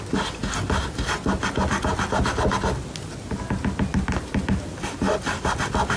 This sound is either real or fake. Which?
real